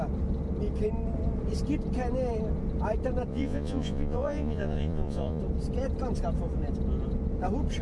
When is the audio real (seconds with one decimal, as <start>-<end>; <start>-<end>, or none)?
0.0-3.3; 5.4-7.8